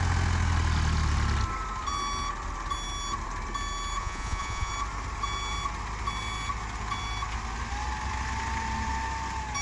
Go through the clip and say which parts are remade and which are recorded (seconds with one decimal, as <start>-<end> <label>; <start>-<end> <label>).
0.0-4.0 recorded; 4.0-4.7 remade; 4.7-9.6 recorded